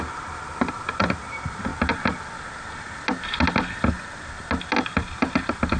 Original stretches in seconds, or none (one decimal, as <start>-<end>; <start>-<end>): 0.0-5.8